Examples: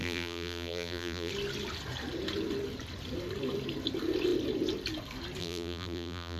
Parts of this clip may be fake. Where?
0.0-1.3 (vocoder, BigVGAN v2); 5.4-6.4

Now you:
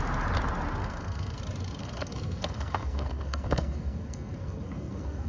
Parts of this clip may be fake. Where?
0.8-1.4 (codec, SNAC); 1.8-5.3

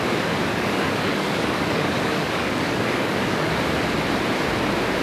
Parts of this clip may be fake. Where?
0.5-3.5 (codec, DAC)

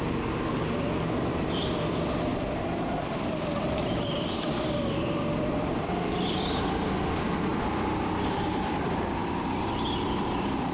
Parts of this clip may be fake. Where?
0.0-7.5 (vocoder, BigVGAN v2); 8.3-10.7

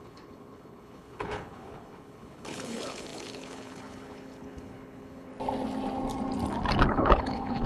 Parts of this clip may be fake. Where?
0.0-5.3 (codec, HILCodec); 6.9-7.7

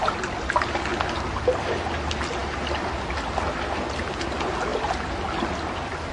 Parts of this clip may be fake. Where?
none

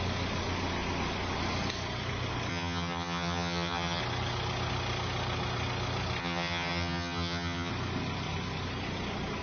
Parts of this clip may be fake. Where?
2.5-4.0 (vocoder, HiFi-GAN); 6.2-7.7

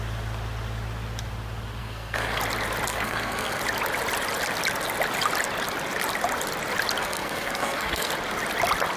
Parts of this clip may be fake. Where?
1.8-2.4 (codec, SNAC); 2.9-3.6; 7.0-8.1